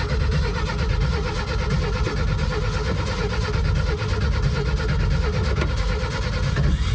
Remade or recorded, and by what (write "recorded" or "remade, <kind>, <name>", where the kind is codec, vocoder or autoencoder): recorded